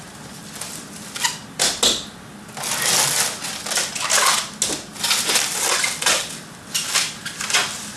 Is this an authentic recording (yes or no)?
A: yes